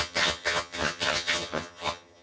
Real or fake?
fake